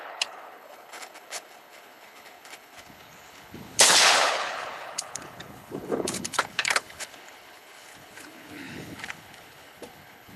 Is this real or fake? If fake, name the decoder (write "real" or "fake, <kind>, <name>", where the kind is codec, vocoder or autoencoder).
fake, codec, HILCodec